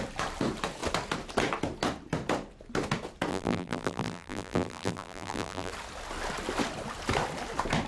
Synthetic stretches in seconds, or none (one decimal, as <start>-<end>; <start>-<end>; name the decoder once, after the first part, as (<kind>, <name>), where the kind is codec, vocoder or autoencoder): 3.3-5.7 (vocoder, BigVGAN v2)